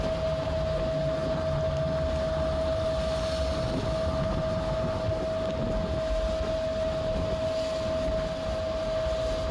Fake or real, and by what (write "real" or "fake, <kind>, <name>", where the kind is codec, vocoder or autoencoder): real